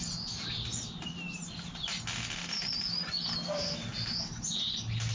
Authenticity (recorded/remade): recorded